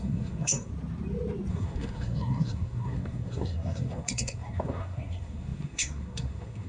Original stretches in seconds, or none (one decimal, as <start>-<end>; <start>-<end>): 0.7-1.5